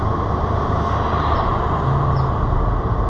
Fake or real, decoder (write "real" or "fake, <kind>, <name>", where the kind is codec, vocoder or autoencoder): real